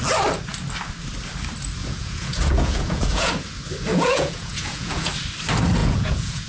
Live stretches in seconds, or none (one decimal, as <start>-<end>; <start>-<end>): 0.0-1.8; 3.3-3.9; 5.1-5.8